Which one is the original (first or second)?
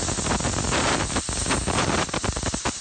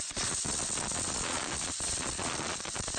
first